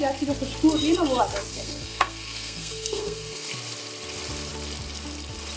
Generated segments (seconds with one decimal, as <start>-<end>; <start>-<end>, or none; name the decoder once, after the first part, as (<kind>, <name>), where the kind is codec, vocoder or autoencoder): 1.5-3.5 (codec, SNAC)